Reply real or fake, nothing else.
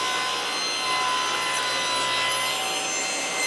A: real